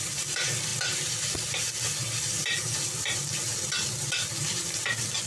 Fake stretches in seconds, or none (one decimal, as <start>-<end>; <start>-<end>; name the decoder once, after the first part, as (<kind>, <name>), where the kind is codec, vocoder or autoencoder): none